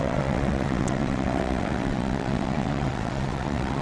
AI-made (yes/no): yes